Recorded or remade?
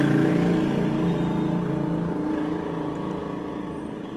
recorded